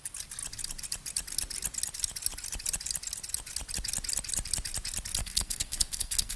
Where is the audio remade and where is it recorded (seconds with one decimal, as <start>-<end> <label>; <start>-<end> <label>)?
0.0-5.2 recorded; 5.2-6.4 remade